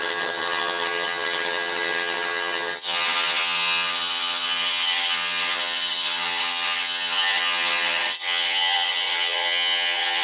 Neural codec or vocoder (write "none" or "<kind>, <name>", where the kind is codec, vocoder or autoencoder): vocoder, HiFi-GAN